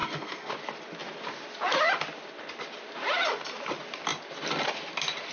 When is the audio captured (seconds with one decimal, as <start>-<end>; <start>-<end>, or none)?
0.5-5.3